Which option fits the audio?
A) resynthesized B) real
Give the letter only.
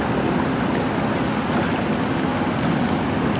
B